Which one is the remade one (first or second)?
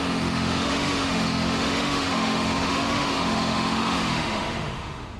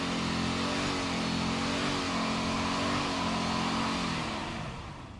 first